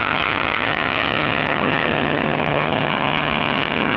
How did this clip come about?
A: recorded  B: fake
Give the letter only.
B